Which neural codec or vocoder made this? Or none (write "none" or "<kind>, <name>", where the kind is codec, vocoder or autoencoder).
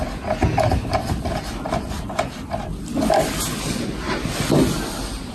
none